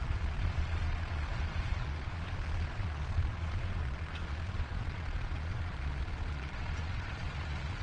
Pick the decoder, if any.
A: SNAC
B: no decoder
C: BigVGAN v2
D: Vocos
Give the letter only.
D